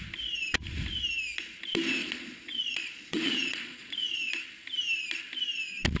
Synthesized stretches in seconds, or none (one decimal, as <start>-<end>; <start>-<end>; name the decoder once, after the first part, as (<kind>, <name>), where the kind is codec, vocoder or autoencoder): 2.0-4.3 (vocoder, Vocos)